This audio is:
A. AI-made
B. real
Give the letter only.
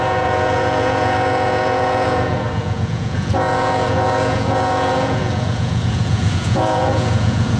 A